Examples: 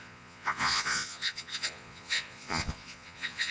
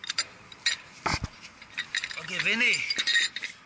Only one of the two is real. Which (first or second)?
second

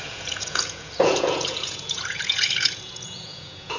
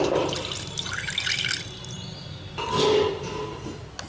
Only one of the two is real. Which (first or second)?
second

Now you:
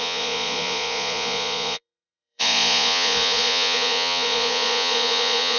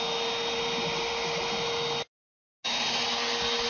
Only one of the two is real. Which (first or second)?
second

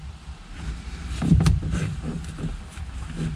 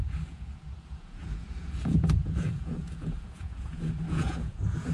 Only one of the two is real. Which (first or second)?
first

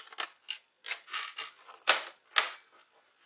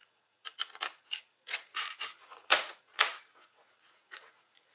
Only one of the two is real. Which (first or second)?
first